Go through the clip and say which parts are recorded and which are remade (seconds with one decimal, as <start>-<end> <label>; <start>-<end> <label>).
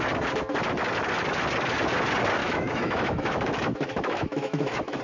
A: 0.0-2.4 recorded; 2.4-5.0 remade